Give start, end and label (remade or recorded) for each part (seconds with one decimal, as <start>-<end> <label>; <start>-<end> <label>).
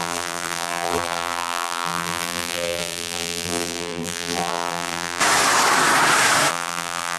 0.0-5.2 remade; 5.2-6.5 recorded; 6.5-7.2 remade